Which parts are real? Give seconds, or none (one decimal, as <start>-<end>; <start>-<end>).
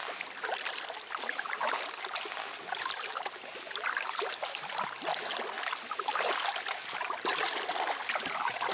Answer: 0.0-8.7